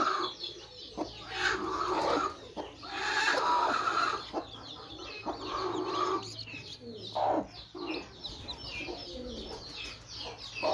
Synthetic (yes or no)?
no